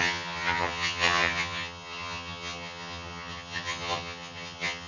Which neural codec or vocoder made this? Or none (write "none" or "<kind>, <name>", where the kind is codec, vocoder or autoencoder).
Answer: vocoder, HiFi-GAN